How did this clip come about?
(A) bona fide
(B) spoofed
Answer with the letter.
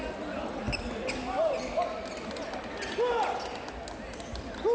A